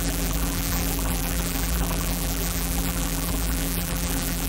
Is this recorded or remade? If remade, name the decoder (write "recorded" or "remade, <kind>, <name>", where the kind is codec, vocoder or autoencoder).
remade, vocoder, BigVGAN v2